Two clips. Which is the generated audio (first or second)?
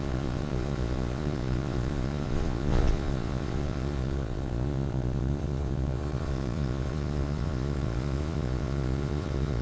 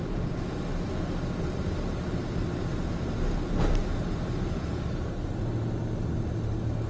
first